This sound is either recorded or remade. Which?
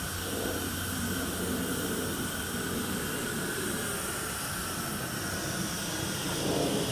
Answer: recorded